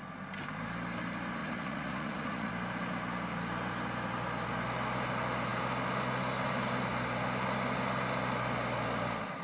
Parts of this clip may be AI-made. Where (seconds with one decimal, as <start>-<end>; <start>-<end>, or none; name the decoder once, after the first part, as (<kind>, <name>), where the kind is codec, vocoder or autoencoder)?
1.4-2.5 (vocoder, Vocos)

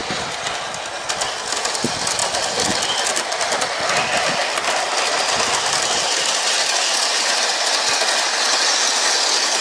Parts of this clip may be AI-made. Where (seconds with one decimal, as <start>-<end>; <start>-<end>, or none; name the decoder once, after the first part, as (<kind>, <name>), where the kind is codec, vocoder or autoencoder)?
none

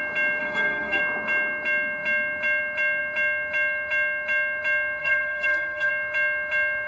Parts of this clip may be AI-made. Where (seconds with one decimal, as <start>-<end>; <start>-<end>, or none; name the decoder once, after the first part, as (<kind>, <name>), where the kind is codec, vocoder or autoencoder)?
0.4-1.0 (codec, SNAC); 5.0-5.9

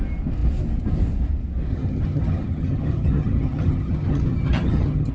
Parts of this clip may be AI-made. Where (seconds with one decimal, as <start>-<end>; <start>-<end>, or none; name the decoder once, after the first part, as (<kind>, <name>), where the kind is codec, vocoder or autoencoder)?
1.7-5.1 (vocoder, HiFi-GAN)

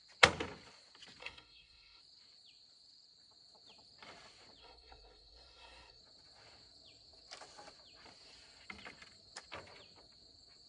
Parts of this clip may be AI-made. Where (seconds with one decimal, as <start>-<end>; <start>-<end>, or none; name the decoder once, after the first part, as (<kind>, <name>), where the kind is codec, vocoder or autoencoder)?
1.2-2.0 (codec, SNAC); 4.6-6.0

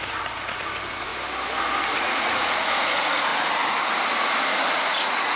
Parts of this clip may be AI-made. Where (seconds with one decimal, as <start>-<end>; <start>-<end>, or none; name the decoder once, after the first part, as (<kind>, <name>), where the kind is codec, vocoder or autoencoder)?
0.0-1.1 (vocoder, Vocos); 1.9-3.3; 4.7-5.4